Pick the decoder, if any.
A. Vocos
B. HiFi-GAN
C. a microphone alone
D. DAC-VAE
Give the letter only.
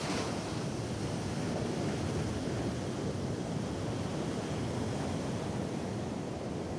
C